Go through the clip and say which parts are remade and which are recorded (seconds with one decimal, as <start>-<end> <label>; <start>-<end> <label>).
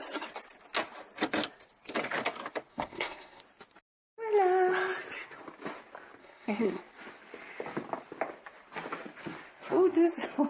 0.0-2.7 recorded; 2.7-3.4 remade; 3.4-6.2 recorded; 6.2-6.8 remade; 6.8-10.5 recorded